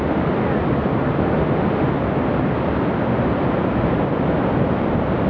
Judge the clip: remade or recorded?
recorded